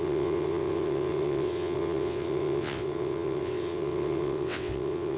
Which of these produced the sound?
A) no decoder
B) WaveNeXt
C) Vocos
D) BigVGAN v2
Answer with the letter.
B